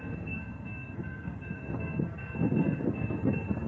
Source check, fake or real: fake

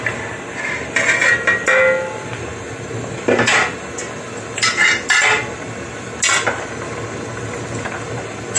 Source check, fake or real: real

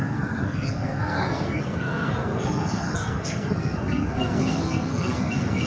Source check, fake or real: fake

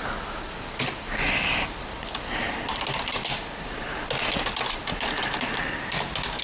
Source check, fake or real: real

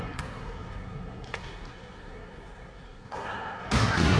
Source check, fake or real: fake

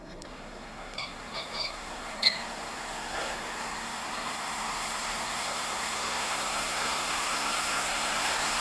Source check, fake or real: fake